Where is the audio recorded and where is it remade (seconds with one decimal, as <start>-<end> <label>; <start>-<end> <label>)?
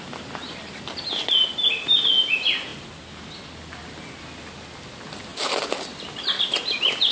0.0-7.1 recorded